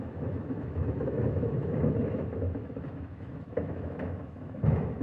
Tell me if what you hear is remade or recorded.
remade